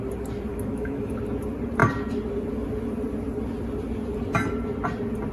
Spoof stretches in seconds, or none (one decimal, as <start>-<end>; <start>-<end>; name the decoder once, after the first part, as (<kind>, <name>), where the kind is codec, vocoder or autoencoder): 0.5-1.1 (autoencoder, DAC-VAE)